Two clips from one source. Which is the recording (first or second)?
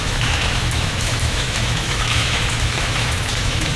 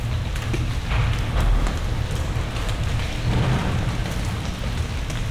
second